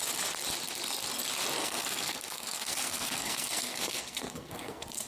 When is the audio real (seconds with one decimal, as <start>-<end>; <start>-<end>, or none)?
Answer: 0.0-1.6